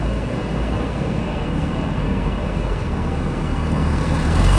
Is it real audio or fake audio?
fake